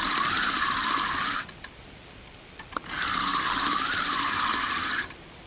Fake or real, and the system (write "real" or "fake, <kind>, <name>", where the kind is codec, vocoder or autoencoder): real